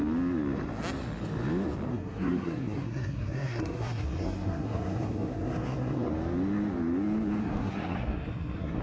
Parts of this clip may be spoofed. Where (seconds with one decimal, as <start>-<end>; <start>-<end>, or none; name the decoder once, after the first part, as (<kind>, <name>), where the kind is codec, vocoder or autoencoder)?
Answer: 1.9-6.1 (codec, SNAC); 7.4-8.8